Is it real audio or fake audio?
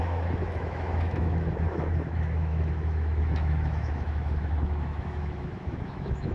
fake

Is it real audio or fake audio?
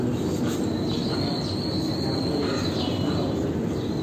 real